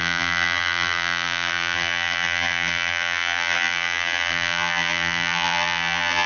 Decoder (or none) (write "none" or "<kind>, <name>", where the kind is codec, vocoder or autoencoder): vocoder, BigVGAN v2